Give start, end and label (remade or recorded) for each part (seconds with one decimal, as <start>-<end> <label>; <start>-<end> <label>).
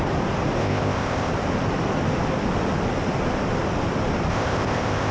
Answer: 0.0-0.6 recorded; 0.6-1.3 remade; 1.3-4.3 recorded; 4.3-5.1 remade